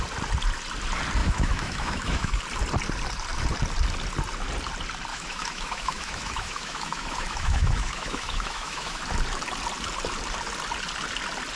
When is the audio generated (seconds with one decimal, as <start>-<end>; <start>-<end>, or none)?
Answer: 1.2-2.4; 5.1-9.0